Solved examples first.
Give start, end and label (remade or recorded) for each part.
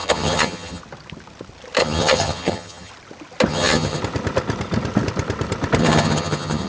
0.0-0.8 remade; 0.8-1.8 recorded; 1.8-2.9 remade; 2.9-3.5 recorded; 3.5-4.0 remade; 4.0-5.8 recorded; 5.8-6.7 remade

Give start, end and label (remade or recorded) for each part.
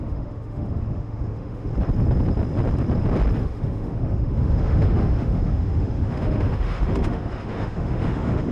0.0-1.7 remade; 1.7-3.4 recorded; 3.4-8.5 remade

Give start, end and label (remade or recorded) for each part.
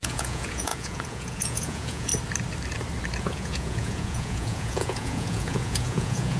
0.0-2.1 remade; 2.1-3.2 recorded; 3.2-6.4 remade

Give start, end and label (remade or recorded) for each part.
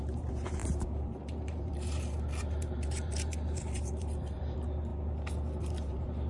0.0-4.9 remade; 4.9-5.6 recorded; 5.6-6.3 remade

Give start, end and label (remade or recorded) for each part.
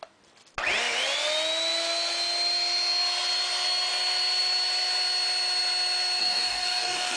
0.0-6.2 recorded; 6.2-7.2 remade